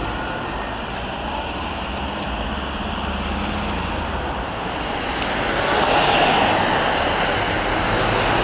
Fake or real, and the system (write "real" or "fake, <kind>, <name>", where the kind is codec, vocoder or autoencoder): real